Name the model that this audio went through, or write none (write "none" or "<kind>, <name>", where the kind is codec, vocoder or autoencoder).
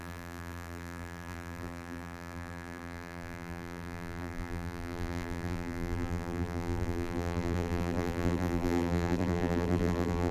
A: vocoder, BigVGAN v2